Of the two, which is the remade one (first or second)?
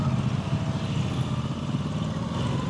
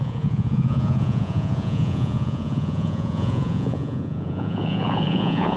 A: second